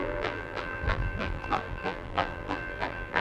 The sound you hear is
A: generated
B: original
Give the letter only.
A